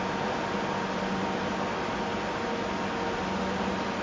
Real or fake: real